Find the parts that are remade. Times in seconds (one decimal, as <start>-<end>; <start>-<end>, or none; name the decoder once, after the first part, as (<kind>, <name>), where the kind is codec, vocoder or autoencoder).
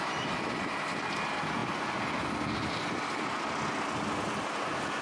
none